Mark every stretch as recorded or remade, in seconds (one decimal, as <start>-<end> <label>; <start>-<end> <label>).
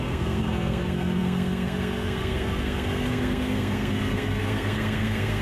0.0-5.4 remade